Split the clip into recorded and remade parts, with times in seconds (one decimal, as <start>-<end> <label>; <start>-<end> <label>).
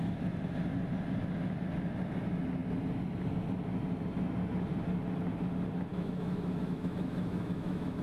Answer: 0.0-5.9 recorded; 5.9-8.0 remade